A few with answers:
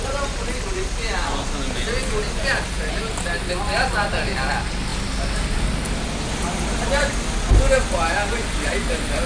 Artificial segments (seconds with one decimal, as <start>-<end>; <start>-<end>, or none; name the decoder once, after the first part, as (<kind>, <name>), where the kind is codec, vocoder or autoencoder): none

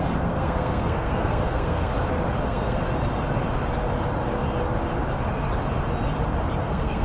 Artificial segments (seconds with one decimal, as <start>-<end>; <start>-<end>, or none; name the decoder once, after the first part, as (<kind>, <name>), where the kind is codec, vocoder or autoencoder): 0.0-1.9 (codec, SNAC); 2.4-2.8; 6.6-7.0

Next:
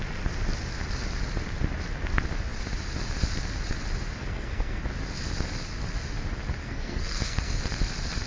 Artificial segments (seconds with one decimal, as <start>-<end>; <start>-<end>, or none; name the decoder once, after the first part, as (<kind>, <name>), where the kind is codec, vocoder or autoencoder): 4.2-4.8 (codec, SNAC); 6.6-7.6

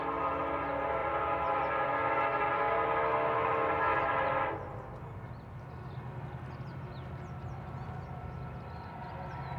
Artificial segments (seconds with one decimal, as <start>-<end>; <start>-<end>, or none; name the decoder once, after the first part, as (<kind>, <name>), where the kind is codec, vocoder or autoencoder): 1.0-1.6 (vocoder, BigVGAN v2)

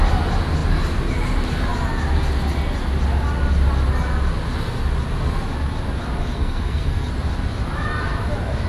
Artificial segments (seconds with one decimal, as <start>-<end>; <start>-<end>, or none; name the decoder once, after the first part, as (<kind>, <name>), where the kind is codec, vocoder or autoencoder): 6.2-7.1 (codec, SNAC)

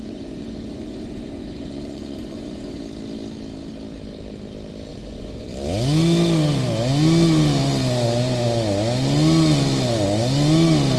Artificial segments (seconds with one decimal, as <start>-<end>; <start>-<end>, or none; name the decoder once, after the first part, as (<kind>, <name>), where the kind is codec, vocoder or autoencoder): 0.0-2.8 (vocoder, Vocos); 4.9-5.5